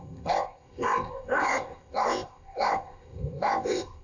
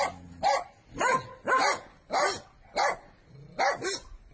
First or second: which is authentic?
second